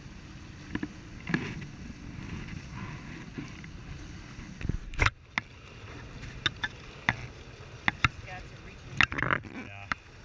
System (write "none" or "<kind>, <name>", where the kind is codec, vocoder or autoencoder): none